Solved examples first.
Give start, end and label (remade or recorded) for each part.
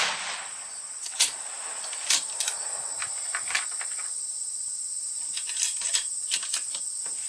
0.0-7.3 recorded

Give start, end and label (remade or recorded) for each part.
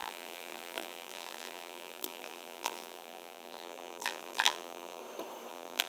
0.0-5.0 remade; 5.0-5.5 recorded; 5.5-5.9 remade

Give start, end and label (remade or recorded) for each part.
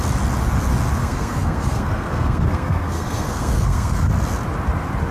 0.0-1.0 recorded; 1.0-4.1 remade; 4.1-5.1 recorded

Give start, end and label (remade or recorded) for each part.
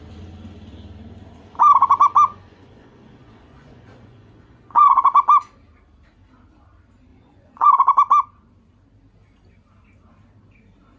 0.0-2.3 recorded; 2.3-5.0 remade; 5.0-7.1 recorded; 7.1-7.7 remade; 7.7-11.0 recorded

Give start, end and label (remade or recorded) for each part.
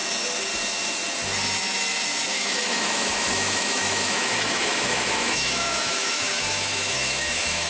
0.0-2.3 recorded; 2.3-7.7 remade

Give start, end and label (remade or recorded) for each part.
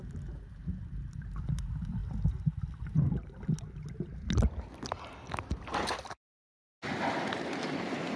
0.0-8.2 recorded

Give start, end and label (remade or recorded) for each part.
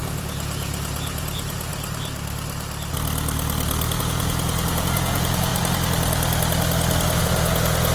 0.0-1.7 remade; 1.7-4.0 recorded; 4.0-5.5 remade; 5.5-7.2 recorded; 7.2-7.9 remade